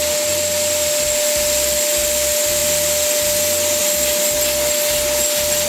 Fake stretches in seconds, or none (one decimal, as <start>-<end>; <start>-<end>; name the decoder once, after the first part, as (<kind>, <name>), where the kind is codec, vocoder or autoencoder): none

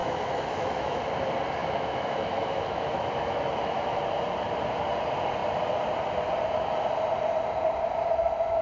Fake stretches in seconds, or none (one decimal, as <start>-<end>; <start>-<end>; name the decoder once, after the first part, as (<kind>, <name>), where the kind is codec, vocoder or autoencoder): 0.0-1.0 (autoencoder, DAC-VAE); 1.6-4.0